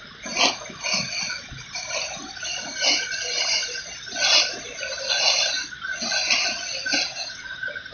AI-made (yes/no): no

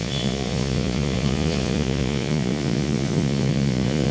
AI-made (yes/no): yes